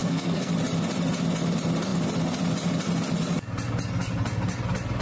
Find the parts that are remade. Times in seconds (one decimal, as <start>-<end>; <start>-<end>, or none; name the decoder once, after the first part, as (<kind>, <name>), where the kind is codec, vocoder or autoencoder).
0.0-0.5 (codec, SNAC)